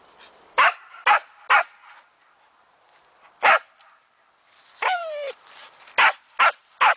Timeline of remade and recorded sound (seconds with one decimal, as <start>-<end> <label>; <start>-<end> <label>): 0.0-7.0 recorded